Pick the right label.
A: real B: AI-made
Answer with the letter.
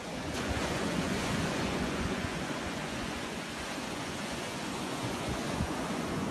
B